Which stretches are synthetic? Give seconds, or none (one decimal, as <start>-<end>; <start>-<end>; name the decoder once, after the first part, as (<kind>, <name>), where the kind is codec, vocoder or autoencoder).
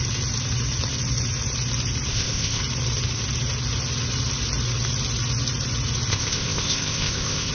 2.1-2.6 (codec, ZipCodec); 6.1-7.5